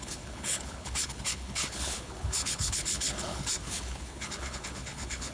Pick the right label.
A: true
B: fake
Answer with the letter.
B